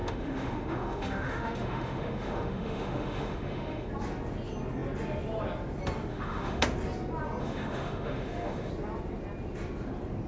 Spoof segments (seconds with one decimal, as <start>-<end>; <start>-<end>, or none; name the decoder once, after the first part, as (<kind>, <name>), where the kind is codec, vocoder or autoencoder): 0.0-3.9 (autoencoder, DAC-VAE); 6.1-6.6; 7.4-8.7